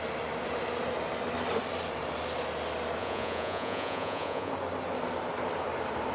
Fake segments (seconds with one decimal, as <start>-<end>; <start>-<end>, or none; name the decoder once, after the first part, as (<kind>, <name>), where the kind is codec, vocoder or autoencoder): 3.0-4.5 (vocoder, Vocos)

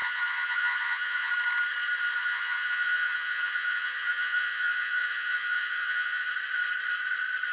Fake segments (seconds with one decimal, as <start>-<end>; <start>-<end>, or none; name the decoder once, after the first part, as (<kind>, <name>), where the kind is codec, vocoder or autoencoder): 0.0-1.3 (vocoder, Vocos); 2.2-6.3